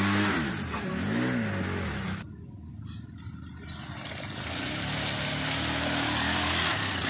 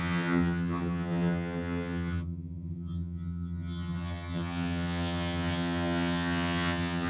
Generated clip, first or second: second